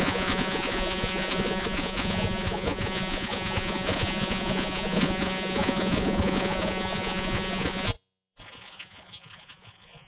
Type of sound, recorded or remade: remade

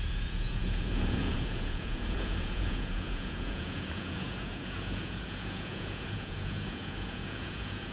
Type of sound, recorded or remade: remade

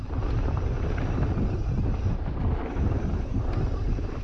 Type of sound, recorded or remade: recorded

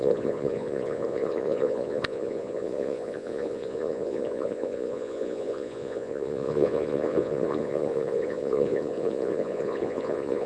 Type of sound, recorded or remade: remade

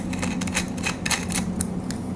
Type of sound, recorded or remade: recorded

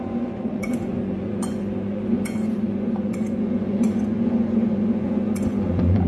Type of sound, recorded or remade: remade